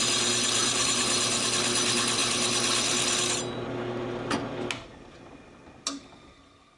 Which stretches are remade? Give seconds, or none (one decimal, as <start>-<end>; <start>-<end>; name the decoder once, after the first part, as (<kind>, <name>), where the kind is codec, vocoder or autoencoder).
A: 0.6-1.2 (vocoder, BigVGAN v2)